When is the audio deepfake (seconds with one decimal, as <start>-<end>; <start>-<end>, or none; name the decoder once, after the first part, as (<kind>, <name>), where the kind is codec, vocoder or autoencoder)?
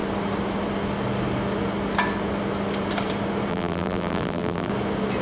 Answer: 3.5-4.7 (vocoder, BigVGAN v2)